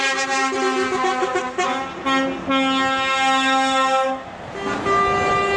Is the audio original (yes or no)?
yes